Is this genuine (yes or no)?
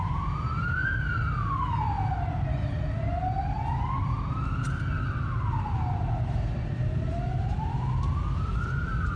yes